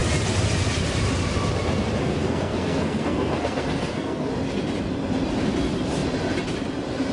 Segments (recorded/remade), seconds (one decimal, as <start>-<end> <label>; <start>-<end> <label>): 0.0-2.0 recorded; 2.0-4.3 remade; 4.3-7.1 recorded